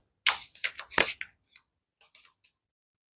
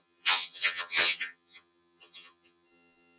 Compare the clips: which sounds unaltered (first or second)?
first